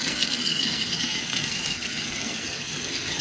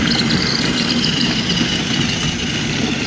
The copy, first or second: first